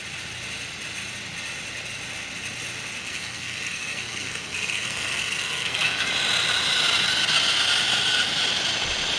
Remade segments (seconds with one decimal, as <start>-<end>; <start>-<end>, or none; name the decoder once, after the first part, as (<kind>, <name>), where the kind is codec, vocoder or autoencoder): 3.0-6.1 (codec, SNAC)